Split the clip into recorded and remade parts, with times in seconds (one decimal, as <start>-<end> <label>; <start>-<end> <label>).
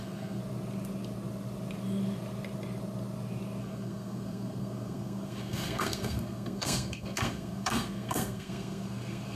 0.0-0.4 remade; 0.4-3.6 recorded; 3.6-9.4 remade